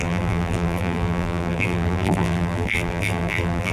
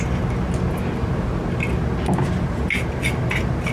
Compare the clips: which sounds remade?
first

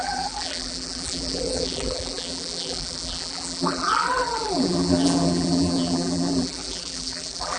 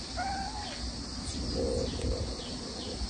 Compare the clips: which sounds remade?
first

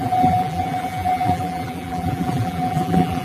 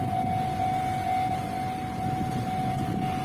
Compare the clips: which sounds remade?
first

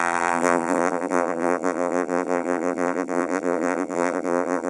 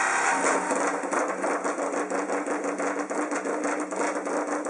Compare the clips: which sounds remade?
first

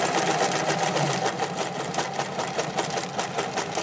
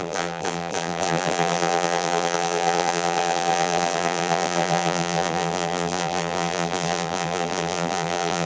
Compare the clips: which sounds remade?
second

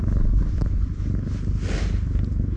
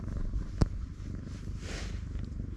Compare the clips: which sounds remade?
second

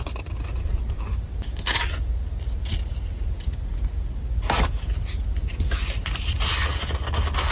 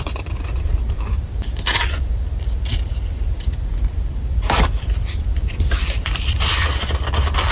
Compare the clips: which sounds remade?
second